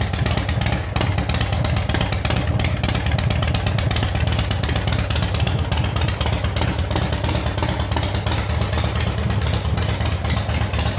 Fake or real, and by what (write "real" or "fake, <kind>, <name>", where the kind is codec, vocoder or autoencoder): real